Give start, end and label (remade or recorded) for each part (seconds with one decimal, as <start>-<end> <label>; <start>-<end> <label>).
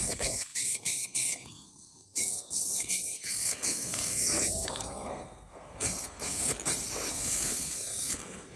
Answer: 0.0-6.5 remade; 6.5-7.1 recorded; 7.1-8.6 remade